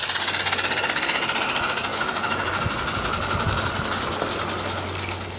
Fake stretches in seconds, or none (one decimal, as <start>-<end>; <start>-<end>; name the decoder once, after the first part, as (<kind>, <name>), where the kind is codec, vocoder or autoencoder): 1.9-2.5 (autoencoder, DAC-VAE)